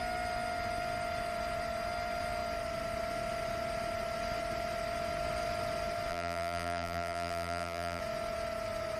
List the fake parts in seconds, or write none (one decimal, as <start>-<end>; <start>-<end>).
6.1-8.0